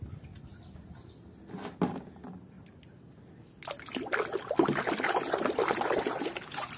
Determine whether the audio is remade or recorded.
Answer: recorded